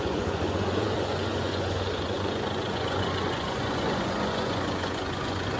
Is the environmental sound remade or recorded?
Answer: remade